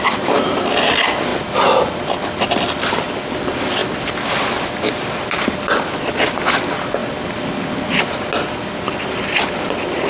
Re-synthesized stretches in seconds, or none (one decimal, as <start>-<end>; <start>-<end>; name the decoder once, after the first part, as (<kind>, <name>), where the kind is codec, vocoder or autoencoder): none